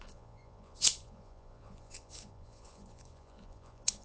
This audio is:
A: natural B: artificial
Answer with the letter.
B